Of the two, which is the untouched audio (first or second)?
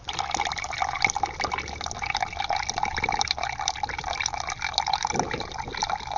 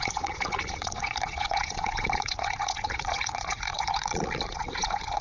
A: first